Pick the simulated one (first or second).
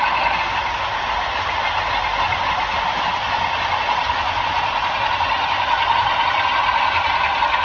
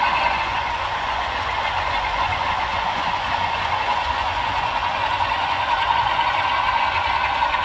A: second